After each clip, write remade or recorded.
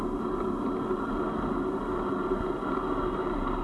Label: recorded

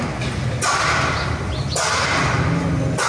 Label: recorded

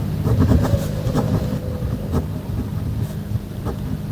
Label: recorded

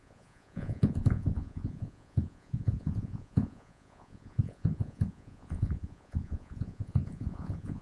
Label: remade